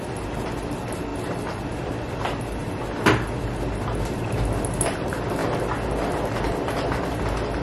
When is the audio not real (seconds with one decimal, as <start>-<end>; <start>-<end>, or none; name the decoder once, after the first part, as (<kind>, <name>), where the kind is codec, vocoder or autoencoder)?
none